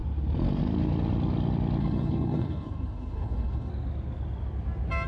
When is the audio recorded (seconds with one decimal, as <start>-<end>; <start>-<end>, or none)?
0.0-1.8; 3.7-5.1